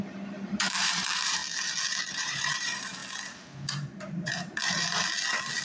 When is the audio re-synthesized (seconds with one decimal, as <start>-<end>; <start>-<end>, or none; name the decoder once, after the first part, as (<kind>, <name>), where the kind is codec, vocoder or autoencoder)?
0.0-1.4 (vocoder, BigVGAN v2); 2.1-3.0; 3.7-4.6

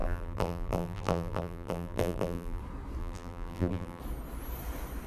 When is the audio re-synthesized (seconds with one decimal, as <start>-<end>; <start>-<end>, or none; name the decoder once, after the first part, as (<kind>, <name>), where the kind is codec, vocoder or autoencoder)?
0.0-2.6 (vocoder, BigVGAN v2); 3.0-4.0

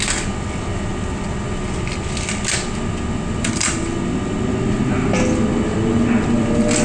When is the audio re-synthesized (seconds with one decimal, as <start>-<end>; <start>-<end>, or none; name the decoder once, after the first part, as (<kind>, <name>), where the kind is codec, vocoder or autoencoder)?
none

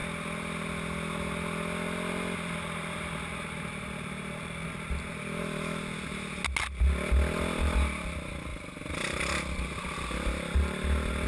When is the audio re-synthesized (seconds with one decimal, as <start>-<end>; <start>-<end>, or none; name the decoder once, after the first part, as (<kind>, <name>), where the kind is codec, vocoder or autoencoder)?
8.5-9.5 (vocoder, BigVGAN v2)

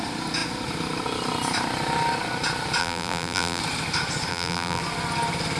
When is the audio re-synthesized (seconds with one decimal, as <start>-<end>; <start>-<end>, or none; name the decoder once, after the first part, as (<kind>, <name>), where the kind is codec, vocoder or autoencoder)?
2.8-3.6 (vocoder, BigVGAN v2); 4.3-4.8

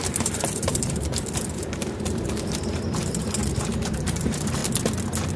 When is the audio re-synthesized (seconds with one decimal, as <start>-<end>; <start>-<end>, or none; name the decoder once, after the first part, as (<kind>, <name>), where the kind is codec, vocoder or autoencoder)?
0.0-4.6 (vocoder, BigVGAN v2)

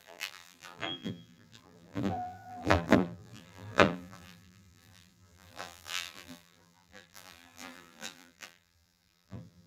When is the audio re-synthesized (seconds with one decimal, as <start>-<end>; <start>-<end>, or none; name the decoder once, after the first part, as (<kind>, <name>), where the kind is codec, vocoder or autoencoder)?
0.0-9.7 (vocoder, BigVGAN v2)

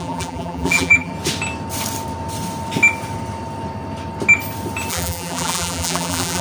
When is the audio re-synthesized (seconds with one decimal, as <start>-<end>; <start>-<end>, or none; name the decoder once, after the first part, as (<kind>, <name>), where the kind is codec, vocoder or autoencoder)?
0.0-1.1 (vocoder, BigVGAN v2); 4.9-6.4